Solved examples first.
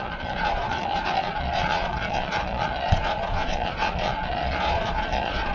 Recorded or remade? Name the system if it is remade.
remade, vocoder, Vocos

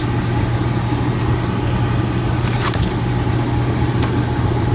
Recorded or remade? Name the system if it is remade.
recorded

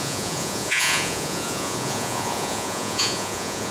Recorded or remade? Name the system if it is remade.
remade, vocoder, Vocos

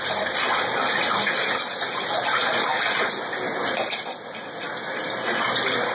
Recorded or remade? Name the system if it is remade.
recorded